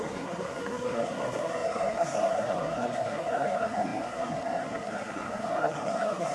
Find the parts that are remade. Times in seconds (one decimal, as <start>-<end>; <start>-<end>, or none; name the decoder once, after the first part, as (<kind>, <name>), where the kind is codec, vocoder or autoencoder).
0.0-6.3 (codec, SNAC)